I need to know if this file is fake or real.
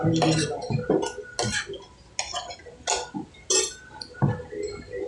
real